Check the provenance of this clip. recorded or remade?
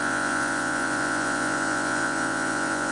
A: remade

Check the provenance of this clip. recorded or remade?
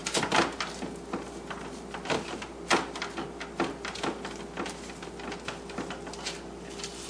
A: recorded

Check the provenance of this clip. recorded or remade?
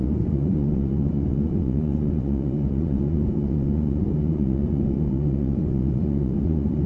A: remade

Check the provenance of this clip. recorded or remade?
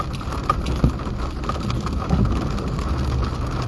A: recorded